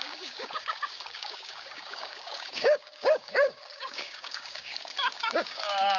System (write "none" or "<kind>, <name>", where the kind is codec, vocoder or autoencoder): codec, DAC